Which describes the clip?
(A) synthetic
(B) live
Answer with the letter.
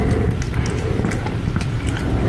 B